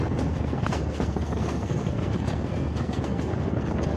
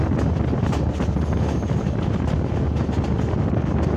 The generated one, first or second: first